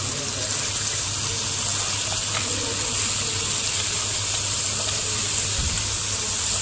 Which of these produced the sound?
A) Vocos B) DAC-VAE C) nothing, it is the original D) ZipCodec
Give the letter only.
C